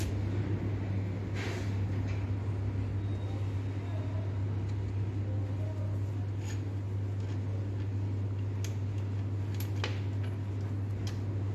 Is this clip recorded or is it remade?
recorded